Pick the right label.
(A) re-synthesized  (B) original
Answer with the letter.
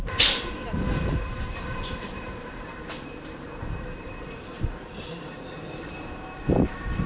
A